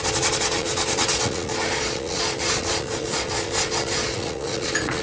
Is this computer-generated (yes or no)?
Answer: yes